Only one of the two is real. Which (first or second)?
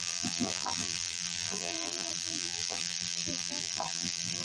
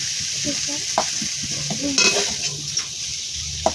second